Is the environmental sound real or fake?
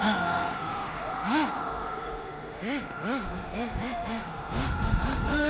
fake